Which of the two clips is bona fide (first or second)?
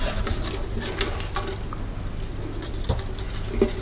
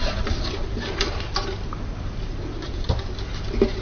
first